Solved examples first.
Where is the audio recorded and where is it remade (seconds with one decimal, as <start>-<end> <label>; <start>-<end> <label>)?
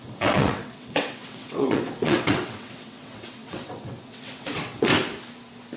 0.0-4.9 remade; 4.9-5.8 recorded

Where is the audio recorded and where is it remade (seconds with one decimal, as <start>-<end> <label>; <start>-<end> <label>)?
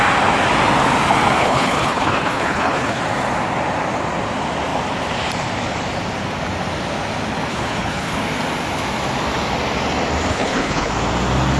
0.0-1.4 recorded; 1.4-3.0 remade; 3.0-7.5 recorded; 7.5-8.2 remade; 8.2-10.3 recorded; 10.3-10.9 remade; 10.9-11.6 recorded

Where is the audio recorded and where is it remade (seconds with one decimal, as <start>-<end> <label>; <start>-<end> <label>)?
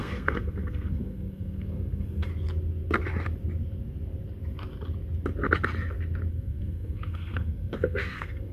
0.0-2.3 remade; 2.3-6.3 recorded; 6.3-8.5 remade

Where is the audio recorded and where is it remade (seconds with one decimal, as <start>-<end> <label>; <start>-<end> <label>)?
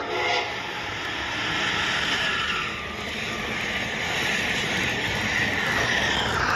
0.0-6.6 recorded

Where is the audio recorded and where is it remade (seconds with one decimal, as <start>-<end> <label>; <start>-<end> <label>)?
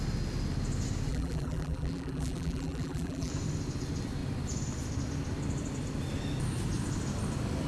0.0-1.1 recorded; 1.1-3.3 remade; 3.3-7.7 recorded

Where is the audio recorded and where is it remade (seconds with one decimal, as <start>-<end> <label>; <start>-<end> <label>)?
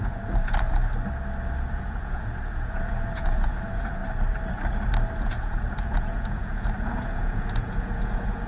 0.0-0.8 remade; 0.8-1.8 recorded; 1.8-4.0 remade; 4.0-5.2 recorded; 5.2-8.5 remade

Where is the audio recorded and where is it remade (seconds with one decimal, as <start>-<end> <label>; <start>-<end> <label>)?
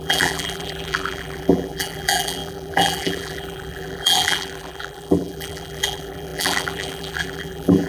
0.0-7.9 remade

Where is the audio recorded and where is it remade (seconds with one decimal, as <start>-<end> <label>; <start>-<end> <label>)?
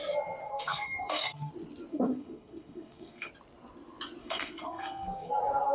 0.0-0.4 recorded; 0.4-1.5 remade; 1.5-1.9 recorded; 1.9-3.3 remade; 3.3-4.2 recorded; 4.2-5.3 remade; 5.3-5.7 recorded